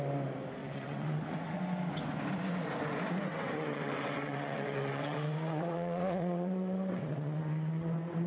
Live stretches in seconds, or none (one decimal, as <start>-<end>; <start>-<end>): 0.0-0.6; 1.6-3.3